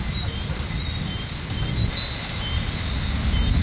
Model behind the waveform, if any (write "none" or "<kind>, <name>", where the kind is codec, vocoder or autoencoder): none